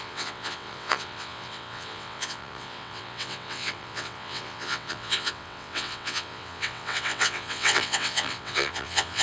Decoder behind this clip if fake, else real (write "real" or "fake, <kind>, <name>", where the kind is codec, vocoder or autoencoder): fake, vocoder, WaveNeXt